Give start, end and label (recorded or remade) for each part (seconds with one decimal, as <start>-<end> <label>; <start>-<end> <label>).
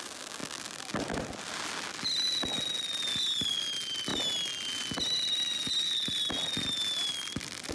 0.0-7.7 recorded